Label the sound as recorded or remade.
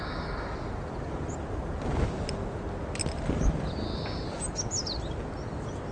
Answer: recorded